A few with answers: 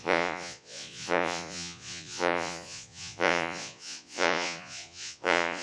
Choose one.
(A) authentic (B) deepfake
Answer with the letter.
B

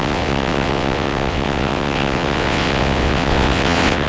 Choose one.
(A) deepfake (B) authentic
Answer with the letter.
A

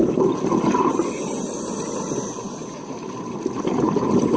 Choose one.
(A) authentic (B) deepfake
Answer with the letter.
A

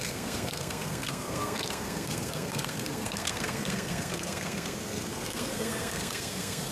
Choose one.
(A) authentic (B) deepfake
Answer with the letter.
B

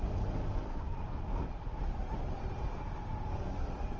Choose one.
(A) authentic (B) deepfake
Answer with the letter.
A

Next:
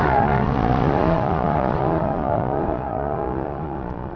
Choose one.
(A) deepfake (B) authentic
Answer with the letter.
A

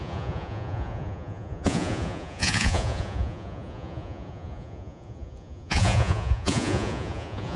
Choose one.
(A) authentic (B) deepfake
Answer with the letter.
B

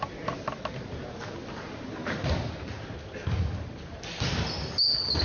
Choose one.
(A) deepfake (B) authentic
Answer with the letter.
B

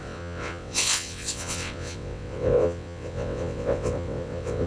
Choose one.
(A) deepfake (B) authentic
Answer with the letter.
A